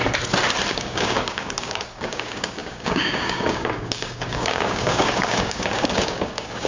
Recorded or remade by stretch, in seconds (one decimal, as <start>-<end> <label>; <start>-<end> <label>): 0.0-0.7 recorded; 0.7-6.7 remade